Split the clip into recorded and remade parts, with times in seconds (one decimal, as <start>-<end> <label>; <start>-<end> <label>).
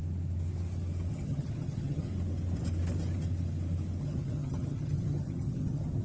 0.0-1.1 recorded; 1.1-2.1 remade; 2.1-4.0 recorded; 4.0-6.0 remade